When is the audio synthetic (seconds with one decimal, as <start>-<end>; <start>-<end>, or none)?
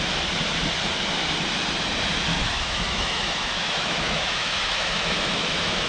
2.3-5.9